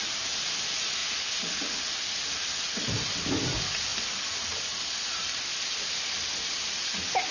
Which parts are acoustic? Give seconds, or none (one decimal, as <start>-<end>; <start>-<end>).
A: 0.0-7.3